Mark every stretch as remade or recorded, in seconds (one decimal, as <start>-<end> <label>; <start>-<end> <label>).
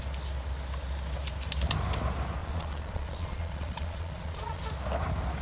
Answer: 0.0-2.4 recorded; 2.4-4.6 remade; 4.6-5.4 recorded